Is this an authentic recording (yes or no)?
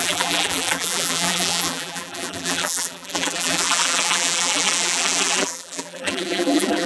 no